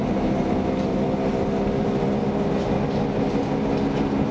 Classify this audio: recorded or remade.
recorded